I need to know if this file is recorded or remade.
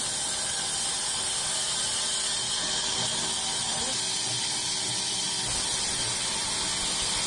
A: recorded